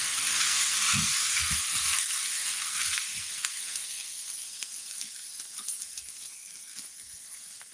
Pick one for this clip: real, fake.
fake